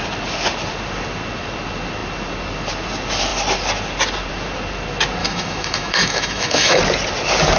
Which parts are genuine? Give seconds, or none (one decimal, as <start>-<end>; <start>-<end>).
0.0-5.2; 6.8-7.6